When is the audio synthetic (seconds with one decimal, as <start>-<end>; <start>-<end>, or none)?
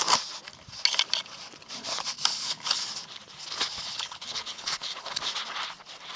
2.3-2.8; 3.8-5.2